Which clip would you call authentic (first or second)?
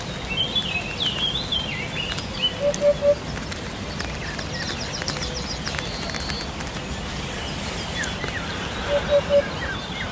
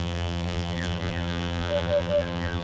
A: first